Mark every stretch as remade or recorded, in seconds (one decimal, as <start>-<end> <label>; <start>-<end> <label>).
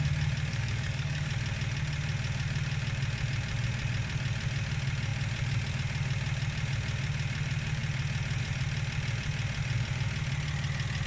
0.0-0.5 recorded; 0.5-1.3 remade; 1.3-11.1 recorded